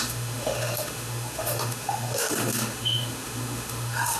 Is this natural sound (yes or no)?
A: no